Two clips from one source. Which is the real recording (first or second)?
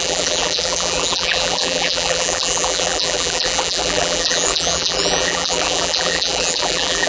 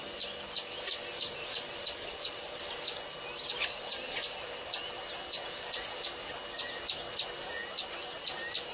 second